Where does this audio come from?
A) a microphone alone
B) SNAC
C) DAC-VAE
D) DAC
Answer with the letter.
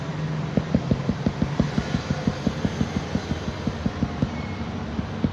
A